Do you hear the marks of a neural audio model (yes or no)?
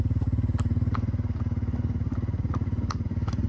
no